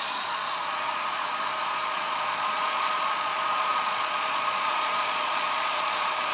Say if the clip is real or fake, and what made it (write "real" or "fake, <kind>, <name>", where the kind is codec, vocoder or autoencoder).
fake, vocoder, Vocos